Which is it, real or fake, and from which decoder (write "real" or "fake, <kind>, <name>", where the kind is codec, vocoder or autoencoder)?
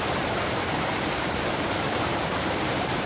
fake, vocoder, BigVGAN v2